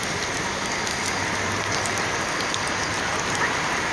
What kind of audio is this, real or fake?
real